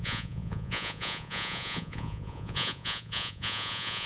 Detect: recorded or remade remade